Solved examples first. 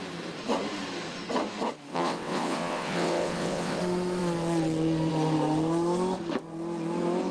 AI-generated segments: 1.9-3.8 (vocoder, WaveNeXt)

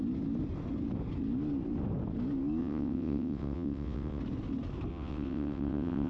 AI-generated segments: 2.6-4.2 (vocoder, WaveNeXt); 4.9-6.1

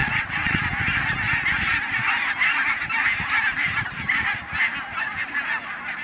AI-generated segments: 0.0-0.6 (vocoder, WaveNeXt)

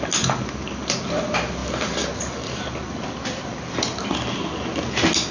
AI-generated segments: none

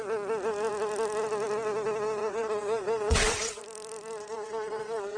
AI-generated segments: 2.2-3.6 (vocoder, WaveNeXt); 4.2-5.2

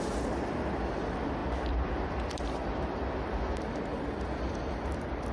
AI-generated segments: none

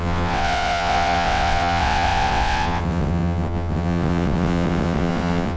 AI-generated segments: 0.0-5.6 (vocoder, WaveNeXt)

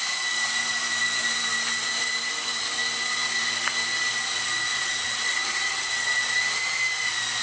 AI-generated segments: 4.7-5.9 (vocoder, WaveNeXt)